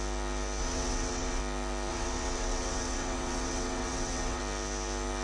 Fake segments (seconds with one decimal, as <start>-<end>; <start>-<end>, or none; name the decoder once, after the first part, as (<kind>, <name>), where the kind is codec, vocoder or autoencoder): 0.6-1.4 (vocoder, WaveNeXt); 1.9-4.4